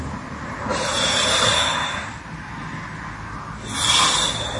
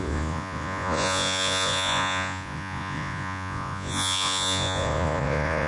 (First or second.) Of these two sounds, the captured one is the first